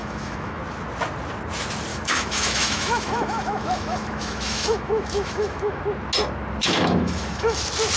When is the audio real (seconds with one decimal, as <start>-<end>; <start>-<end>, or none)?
0.6-1.9; 5.8-6.6; 7.6-8.0